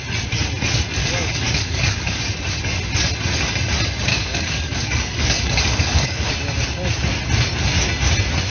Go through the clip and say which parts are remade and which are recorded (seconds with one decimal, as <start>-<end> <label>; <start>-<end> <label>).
0.0-1.0 recorded; 1.0-2.2 remade; 2.2-4.1 recorded; 4.1-6.3 remade; 6.3-8.5 recorded

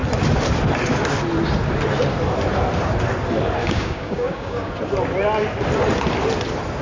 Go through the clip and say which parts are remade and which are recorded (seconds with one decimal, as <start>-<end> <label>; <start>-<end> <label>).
0.0-3.6 recorded; 3.6-4.7 remade; 4.7-6.8 recorded

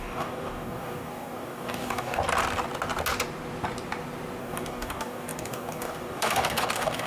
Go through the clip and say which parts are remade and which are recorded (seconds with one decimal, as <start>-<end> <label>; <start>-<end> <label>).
0.0-2.2 remade; 2.2-4.4 recorded; 4.4-7.1 remade